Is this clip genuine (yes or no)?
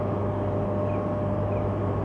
yes